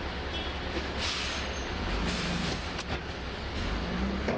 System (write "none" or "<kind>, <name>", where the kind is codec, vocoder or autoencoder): none